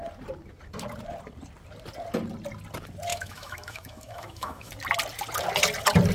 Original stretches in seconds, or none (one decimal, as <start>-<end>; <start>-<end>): 0.0-3.1; 4.7-6.1